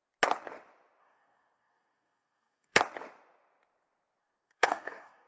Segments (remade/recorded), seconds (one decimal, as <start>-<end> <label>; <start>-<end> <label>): 0.0-1.0 recorded; 1.0-2.8 remade; 2.8-4.2 recorded; 4.2-5.3 remade